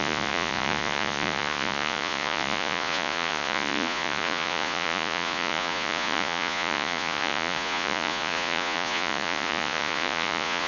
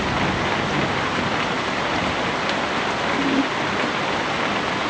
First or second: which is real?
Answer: second